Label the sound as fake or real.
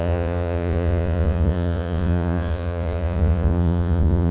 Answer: fake